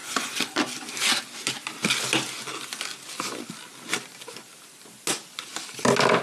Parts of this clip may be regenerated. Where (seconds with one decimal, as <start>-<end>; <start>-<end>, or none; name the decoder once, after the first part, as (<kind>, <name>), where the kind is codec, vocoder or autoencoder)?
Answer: 0.0-0.6 (vocoder, Vocos)